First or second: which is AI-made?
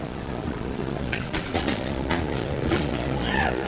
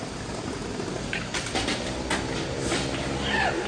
first